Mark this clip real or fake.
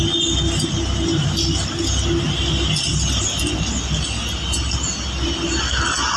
real